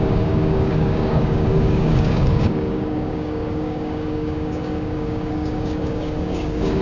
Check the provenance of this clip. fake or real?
fake